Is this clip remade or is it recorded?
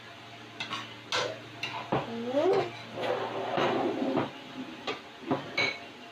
recorded